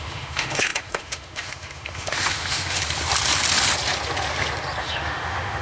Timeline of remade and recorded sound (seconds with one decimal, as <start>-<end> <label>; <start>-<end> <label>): 0.0-2.8 remade; 2.8-4.8 recorded; 4.8-5.6 remade